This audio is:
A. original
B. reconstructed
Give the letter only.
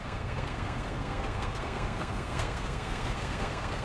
B